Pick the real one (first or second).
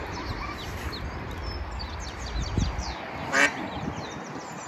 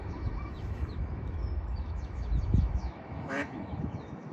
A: first